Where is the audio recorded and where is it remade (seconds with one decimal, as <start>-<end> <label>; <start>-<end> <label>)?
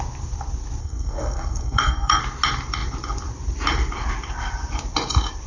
0.0-0.8 recorded; 0.8-2.2 remade; 2.2-5.5 recorded